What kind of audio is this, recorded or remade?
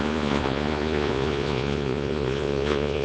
remade